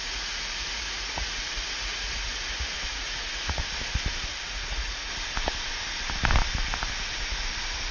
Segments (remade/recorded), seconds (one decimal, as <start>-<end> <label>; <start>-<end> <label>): 0.0-3.6 remade; 3.6-4.3 recorded; 4.3-5.1 remade; 5.1-7.9 recorded